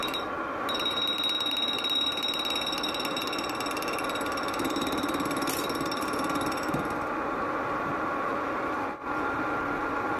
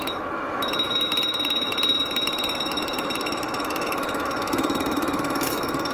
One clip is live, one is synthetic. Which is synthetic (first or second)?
second